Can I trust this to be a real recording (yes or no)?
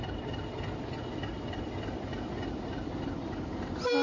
yes